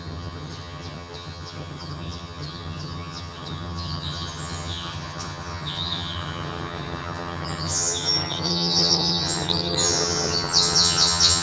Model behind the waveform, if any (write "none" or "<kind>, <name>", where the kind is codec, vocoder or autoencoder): vocoder, HiFi-GAN